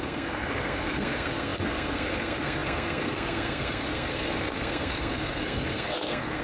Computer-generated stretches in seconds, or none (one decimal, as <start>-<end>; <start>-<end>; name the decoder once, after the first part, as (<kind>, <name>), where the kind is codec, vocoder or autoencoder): 0.0-6.4 (codec, SNAC)